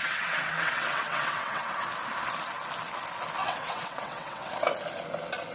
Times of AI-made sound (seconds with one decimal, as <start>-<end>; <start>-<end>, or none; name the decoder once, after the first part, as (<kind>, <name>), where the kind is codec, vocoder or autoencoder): 0.0-1.7 (vocoder, WaveNeXt); 3.4-4.5